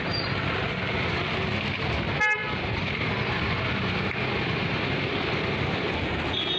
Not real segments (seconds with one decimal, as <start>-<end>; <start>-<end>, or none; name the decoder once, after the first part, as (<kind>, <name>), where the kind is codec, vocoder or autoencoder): none